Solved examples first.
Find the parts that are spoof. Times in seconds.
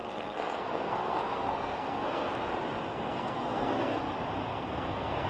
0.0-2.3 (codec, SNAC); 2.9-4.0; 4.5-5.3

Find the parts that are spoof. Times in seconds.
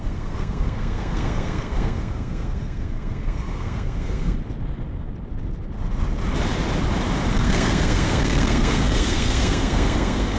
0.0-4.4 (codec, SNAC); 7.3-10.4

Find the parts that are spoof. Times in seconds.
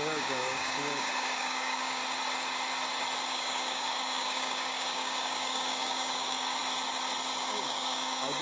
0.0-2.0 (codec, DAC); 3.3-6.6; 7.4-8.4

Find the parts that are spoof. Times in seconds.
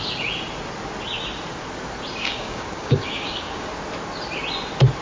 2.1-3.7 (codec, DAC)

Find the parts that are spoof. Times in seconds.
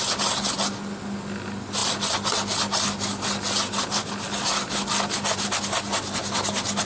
none